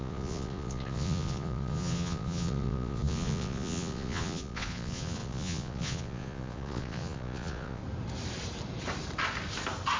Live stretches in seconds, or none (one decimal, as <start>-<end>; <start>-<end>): 7.8-10.0